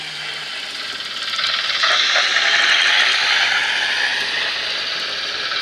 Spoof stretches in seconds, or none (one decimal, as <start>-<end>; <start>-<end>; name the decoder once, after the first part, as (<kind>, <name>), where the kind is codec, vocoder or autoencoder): none